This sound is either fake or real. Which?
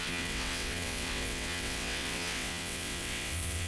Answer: fake